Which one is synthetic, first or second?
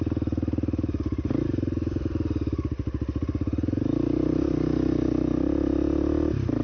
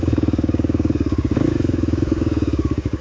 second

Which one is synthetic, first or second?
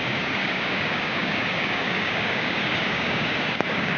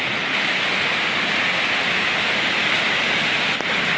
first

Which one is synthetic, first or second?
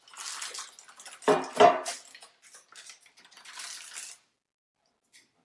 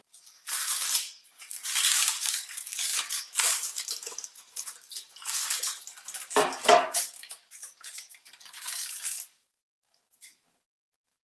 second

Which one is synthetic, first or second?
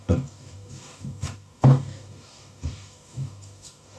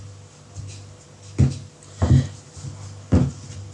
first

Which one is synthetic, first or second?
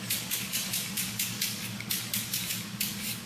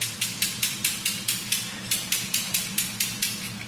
first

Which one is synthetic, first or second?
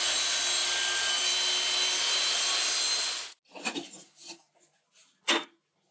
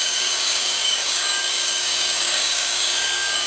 second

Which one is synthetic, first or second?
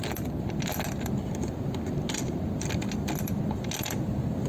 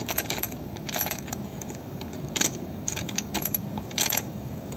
second